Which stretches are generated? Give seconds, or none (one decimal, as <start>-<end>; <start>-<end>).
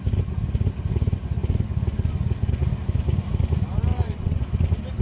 3.9-4.4